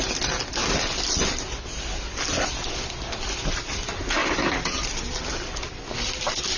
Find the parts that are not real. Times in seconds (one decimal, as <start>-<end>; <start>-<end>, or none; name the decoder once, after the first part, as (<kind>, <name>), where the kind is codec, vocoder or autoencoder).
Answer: none